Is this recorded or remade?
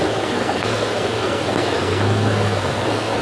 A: remade